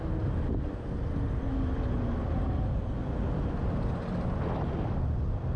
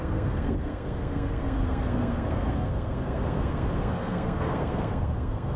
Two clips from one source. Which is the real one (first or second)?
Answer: first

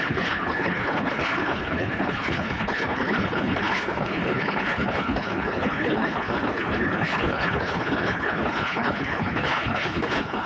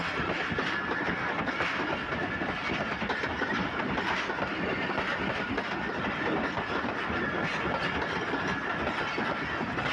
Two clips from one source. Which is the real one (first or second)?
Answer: second